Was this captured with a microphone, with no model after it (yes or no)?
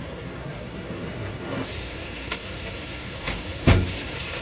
no